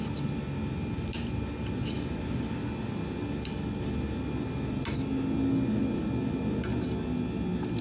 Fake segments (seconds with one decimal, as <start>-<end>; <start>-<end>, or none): none